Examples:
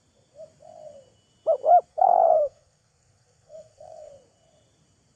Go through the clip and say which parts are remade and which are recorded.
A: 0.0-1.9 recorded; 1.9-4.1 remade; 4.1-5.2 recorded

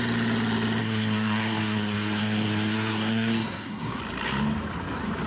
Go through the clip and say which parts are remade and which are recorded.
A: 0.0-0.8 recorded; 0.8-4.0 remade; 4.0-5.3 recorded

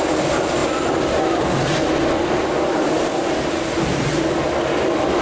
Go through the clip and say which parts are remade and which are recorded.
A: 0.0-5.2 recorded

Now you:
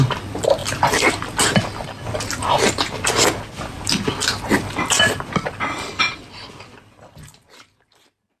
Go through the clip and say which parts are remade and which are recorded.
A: 0.0-8.4 recorded

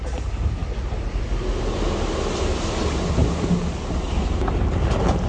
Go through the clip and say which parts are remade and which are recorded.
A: 0.0-5.3 recorded

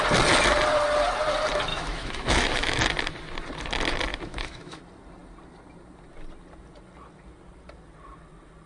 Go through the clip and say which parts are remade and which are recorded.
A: 0.0-1.7 recorded; 1.7-2.8 remade; 2.8-4.1 recorded; 4.1-4.8 remade; 4.8-8.7 recorded

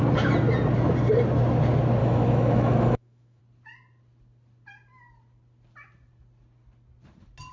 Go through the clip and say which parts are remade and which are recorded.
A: 0.0-2.0 recorded; 2.0-3.4 remade; 3.4-7.5 recorded